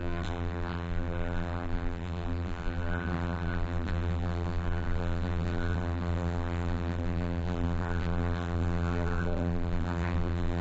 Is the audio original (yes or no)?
no